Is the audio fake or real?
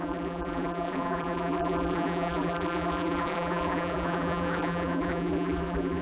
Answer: fake